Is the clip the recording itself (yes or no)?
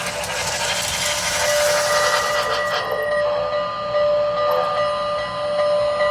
yes